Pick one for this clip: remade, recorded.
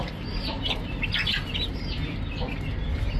recorded